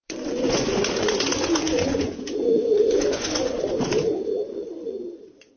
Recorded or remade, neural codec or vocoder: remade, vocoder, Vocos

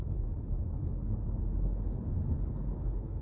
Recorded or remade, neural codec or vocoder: remade, codec, HILCodec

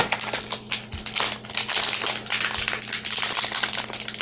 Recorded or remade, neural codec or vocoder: recorded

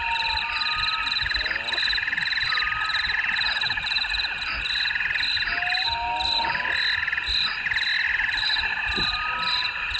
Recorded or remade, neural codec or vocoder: recorded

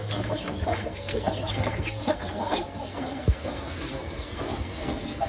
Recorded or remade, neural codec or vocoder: remade, codec, SNAC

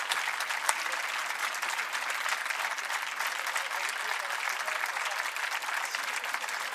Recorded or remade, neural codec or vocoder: recorded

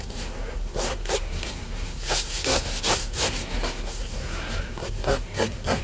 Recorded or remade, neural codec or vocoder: remade, codec, SNAC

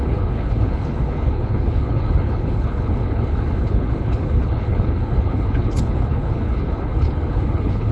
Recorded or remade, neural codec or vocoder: remade, codec, HILCodec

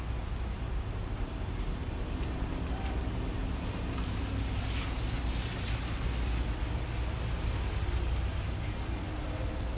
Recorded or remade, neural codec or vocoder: recorded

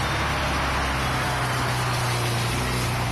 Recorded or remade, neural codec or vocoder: recorded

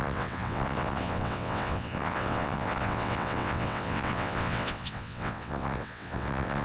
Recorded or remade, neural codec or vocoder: remade, vocoder, WaveNeXt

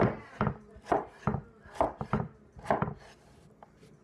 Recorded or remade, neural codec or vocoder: recorded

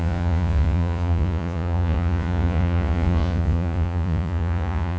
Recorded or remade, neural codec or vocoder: remade, vocoder, Vocos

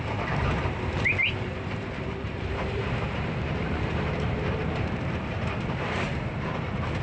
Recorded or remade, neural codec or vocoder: remade, vocoder, BigVGAN v2